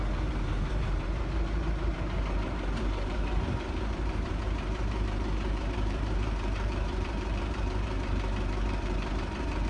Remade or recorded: remade